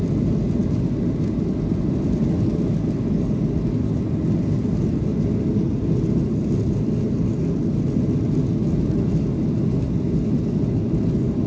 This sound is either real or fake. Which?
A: real